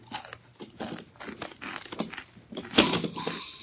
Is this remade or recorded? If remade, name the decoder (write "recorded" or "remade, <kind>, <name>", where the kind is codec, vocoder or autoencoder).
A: recorded